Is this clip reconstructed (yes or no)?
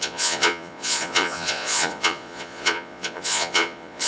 yes